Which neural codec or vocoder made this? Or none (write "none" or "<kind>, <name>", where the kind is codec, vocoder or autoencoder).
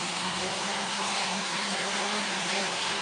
codec, SNAC